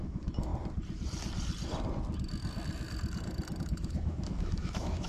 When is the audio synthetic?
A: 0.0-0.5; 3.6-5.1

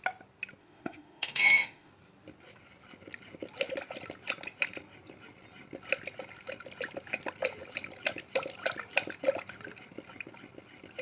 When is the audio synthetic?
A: 0.6-1.9

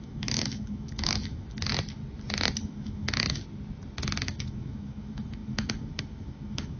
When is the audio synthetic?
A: 0.0-1.7; 2.6-3.4; 4.2-6.8

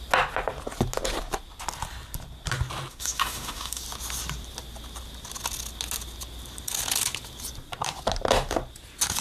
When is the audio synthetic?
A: 2.9-3.8